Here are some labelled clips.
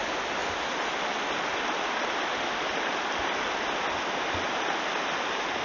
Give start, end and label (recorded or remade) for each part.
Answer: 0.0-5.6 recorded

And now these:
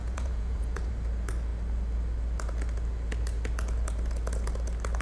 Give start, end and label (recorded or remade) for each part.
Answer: 0.0-0.9 remade; 0.9-5.0 recorded

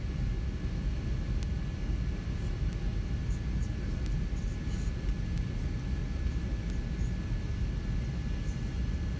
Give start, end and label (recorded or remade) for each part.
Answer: 0.0-9.2 recorded